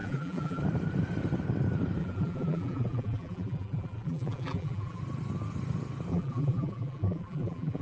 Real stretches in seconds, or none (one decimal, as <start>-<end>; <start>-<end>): 0.6-2.0; 5.0-6.1